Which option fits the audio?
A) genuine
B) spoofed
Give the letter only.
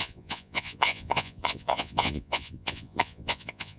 B